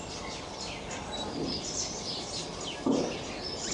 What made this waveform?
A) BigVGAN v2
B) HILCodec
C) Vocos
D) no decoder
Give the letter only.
D